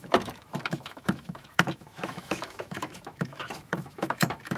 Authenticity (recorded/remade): remade